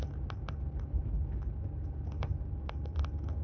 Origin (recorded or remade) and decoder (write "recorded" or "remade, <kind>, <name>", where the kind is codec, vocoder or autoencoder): recorded